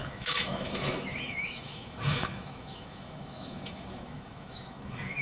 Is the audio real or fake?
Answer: fake